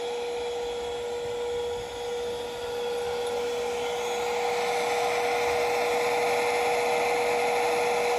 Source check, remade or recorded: recorded